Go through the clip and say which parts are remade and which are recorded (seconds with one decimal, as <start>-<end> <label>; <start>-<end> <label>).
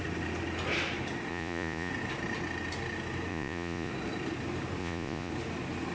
0.0-1.3 recorded; 1.3-1.9 remade; 1.9-3.3 recorded; 3.3-3.9 remade; 3.9-4.8 recorded; 4.8-5.3 remade; 5.3-5.9 recorded